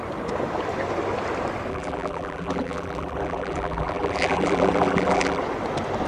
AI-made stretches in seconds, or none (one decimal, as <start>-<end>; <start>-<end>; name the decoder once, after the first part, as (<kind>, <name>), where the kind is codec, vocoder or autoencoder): 1.7-5.4 (vocoder, BigVGAN v2)